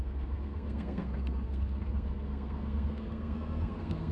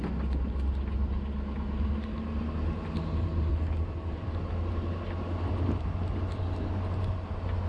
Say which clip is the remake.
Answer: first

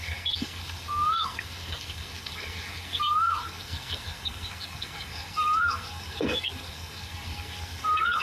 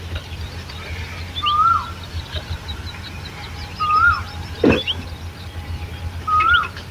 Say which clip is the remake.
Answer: first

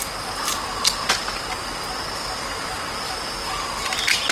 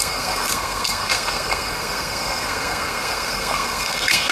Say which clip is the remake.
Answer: second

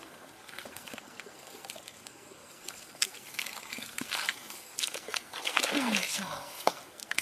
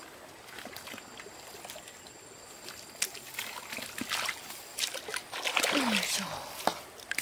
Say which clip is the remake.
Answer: first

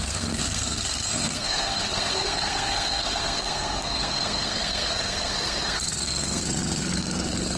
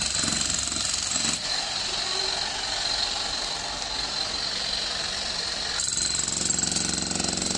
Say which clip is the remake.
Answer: first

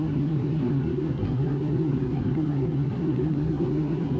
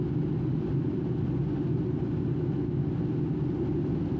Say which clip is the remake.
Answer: first